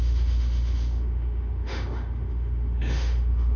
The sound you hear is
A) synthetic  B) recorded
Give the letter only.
A